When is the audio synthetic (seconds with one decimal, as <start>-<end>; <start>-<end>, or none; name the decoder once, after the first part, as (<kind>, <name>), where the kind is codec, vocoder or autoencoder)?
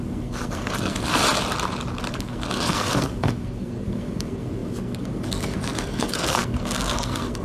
0.0-1.1 (codec, SNAC); 2.1-7.4